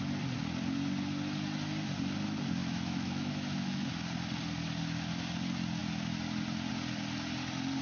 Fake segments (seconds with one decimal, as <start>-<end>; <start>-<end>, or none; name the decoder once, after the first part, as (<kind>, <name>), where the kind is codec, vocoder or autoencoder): 2.6-3.9 (autoencoder, DAC-VAE)